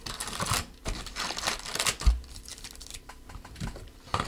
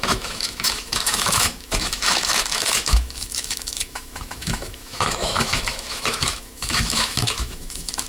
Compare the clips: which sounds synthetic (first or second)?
second